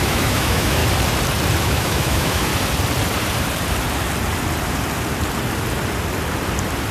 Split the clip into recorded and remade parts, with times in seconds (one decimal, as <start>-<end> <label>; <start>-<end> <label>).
0.0-0.8 remade; 0.8-1.6 recorded; 1.6-2.5 remade; 2.5-6.9 recorded